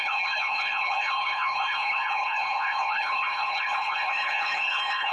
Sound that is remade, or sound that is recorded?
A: remade